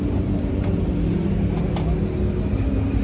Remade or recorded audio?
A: recorded